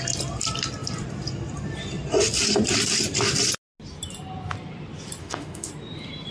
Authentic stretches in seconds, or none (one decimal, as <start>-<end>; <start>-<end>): 0.0-5.2; 5.7-6.3